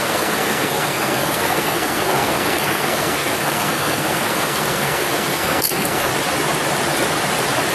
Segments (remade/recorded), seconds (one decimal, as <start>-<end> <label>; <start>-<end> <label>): 0.0-6.1 remade; 6.1-7.7 recorded